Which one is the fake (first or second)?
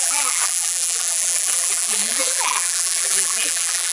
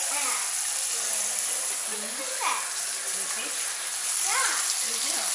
first